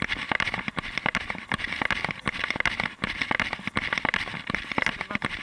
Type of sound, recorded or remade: remade